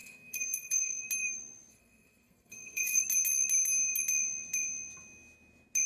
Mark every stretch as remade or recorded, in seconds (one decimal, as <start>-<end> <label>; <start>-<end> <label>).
0.0-1.0 remade; 1.0-1.7 recorded; 1.7-3.0 remade; 3.0-5.9 recorded